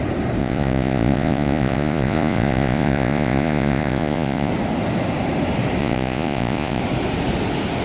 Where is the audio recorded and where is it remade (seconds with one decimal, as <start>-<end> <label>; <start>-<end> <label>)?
0.0-0.4 recorded; 0.4-4.5 remade; 4.5-5.8 recorded; 5.8-6.8 remade; 6.8-7.8 recorded